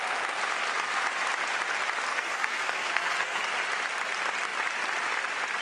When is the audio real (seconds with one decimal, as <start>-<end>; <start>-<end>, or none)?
0.0-2.1; 3.4-5.6